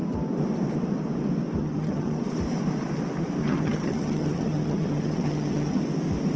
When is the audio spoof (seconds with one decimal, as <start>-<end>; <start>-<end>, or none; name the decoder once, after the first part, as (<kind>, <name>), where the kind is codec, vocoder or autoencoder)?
1.6-2.2 (vocoder, HiFi-GAN); 3.4-5.8